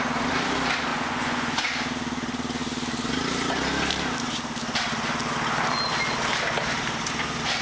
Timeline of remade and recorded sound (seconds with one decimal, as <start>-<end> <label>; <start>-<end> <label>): 0.0-0.9 recorded; 0.9-1.6 remade; 1.6-7.6 recorded